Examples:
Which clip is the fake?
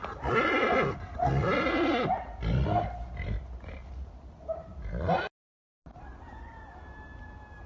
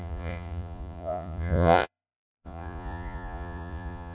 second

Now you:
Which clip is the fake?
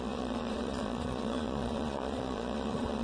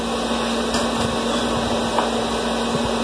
first